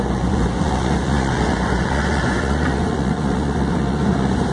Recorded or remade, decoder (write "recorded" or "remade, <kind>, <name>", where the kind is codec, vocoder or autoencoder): remade, vocoder, Vocos